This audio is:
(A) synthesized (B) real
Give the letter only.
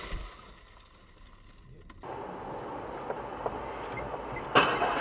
B